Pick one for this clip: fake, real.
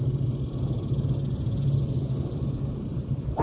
real